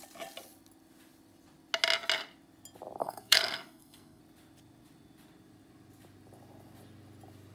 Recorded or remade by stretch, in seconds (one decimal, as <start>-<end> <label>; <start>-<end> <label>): 0.0-3.0 recorded; 3.0-4.2 remade; 4.2-7.5 recorded